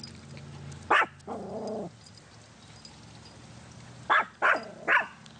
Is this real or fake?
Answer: real